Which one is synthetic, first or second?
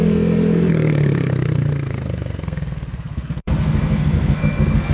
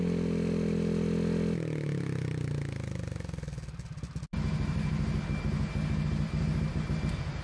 first